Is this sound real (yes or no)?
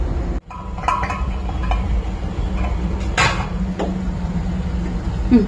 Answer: yes